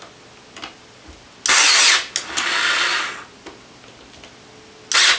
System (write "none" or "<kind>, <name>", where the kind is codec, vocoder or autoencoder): none